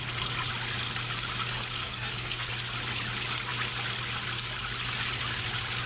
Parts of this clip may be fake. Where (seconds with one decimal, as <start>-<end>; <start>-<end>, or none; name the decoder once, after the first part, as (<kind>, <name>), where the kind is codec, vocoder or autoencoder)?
1.8-2.5 (codec, SNAC)